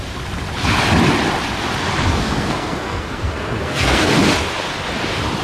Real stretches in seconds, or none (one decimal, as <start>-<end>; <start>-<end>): 0.0-2.1; 4.1-5.4